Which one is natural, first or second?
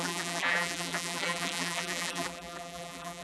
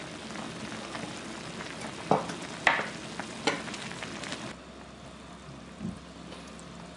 second